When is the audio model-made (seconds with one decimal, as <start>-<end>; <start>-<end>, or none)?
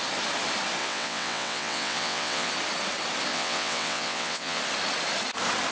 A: 0.8-2.5; 3.3-4.6